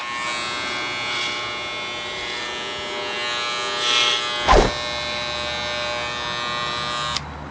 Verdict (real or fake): real